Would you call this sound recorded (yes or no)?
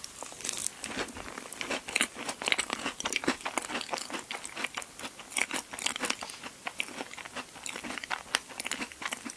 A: yes